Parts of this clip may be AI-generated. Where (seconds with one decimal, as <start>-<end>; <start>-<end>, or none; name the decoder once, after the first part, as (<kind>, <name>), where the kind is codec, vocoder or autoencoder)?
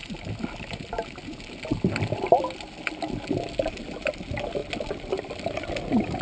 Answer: none